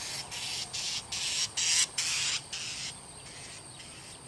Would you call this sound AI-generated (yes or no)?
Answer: no